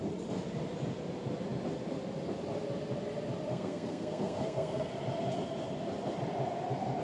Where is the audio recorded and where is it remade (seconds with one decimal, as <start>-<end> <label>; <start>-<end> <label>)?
0.0-3.5 recorded; 3.5-4.9 remade; 4.9-7.0 recorded